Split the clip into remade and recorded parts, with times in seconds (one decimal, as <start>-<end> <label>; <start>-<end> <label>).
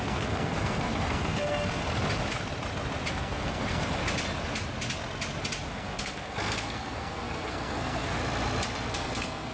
0.0-1.8 remade; 1.8-3.1 recorded; 3.1-4.0 remade; 4.0-5.7 recorded; 5.7-8.2 remade; 8.2-8.9 recorded; 8.9-9.5 remade